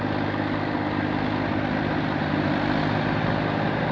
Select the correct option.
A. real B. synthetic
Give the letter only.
A